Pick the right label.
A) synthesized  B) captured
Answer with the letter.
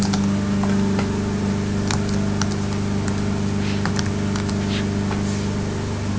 B